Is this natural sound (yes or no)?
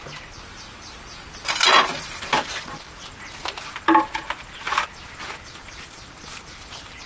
yes